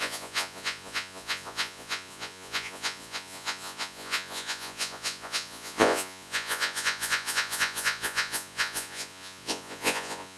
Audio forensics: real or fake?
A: fake